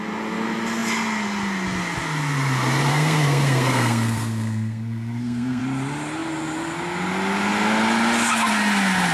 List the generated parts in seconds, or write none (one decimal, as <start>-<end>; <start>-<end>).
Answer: 2.9-5.6